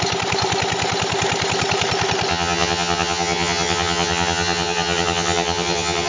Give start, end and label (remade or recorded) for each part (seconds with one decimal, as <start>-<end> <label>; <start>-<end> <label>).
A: 0.0-2.3 recorded; 2.3-6.1 remade